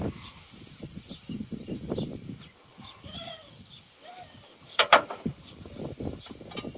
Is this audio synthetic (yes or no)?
no